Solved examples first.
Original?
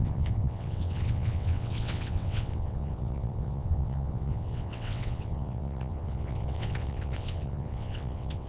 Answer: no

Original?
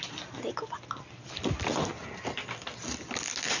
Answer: yes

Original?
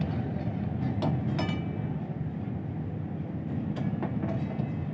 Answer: yes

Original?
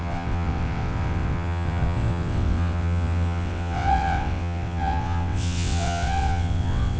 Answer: no